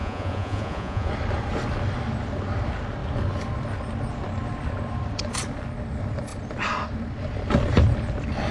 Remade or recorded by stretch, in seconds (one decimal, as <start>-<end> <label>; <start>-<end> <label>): 0.0-1.1 remade; 1.1-8.5 recorded